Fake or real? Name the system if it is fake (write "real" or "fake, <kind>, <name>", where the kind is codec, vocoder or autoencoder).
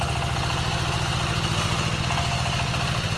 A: real